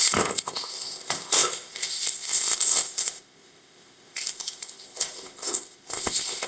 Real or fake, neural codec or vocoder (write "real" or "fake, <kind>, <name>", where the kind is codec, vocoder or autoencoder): fake, codec, ZipCodec